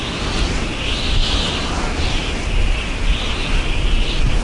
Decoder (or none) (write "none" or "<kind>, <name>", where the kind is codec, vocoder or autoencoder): none